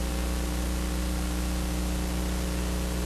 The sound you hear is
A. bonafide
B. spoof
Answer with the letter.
A